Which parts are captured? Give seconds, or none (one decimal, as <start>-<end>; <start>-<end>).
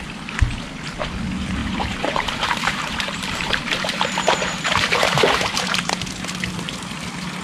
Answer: 0.0-1.6; 6.0-7.4